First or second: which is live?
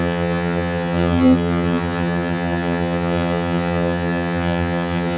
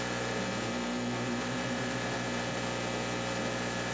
second